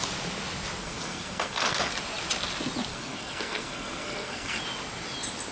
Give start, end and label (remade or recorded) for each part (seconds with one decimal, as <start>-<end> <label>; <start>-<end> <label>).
0.0-0.8 recorded; 0.8-1.9 remade; 1.9-2.9 recorded; 2.9-4.6 remade; 4.6-5.5 recorded